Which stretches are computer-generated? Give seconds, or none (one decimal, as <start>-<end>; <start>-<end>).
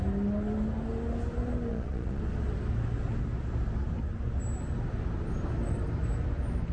1.7-2.2